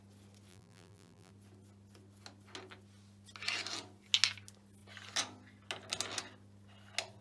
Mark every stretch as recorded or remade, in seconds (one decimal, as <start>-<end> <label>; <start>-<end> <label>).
0.0-0.5 recorded; 0.5-1.3 remade; 1.3-7.2 recorded